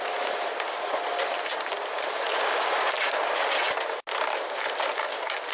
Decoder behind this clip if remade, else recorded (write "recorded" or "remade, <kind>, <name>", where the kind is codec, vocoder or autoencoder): recorded